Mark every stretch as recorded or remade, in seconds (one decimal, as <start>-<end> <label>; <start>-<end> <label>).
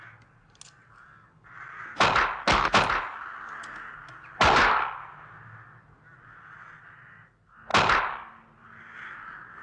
0.0-9.6 recorded